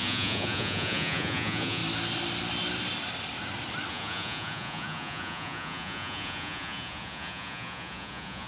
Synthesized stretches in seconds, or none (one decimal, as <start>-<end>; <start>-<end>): 0.0-1.8; 3.9-8.5

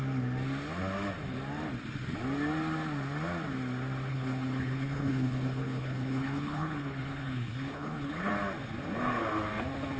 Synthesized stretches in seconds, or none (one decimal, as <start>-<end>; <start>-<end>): 4.1-8.3